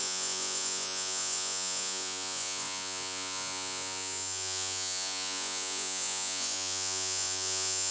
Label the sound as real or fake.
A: fake